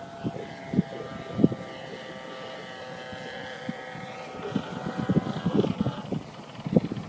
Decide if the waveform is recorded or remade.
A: recorded